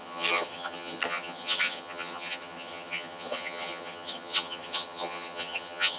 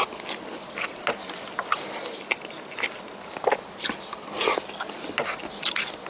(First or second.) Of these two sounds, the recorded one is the second